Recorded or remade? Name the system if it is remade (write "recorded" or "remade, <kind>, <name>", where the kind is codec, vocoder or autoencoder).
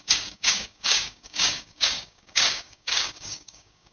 remade, codec, DAC